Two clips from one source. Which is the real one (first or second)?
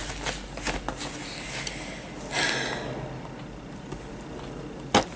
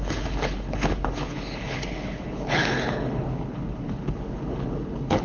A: first